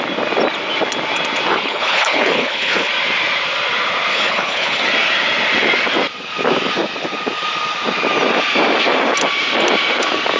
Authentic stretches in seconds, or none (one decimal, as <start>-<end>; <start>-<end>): 0.0-1.5; 2.9-4.1; 4.8-10.4